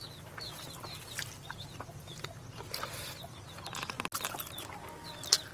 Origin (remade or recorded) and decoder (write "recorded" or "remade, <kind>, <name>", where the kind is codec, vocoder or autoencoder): recorded